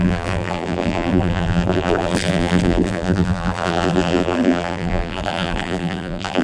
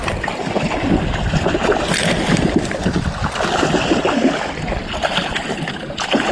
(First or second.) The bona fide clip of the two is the second